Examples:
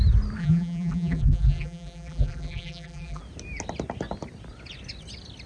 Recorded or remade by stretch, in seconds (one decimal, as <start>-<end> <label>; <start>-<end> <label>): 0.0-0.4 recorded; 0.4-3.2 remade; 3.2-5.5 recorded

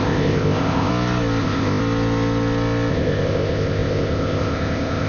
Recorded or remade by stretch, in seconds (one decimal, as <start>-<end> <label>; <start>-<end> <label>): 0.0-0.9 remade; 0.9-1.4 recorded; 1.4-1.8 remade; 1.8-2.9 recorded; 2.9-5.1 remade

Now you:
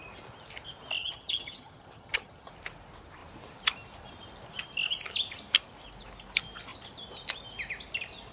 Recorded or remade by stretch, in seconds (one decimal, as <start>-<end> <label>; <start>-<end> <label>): 0.0-1.0 recorded; 1.0-2.5 remade; 2.5-8.3 recorded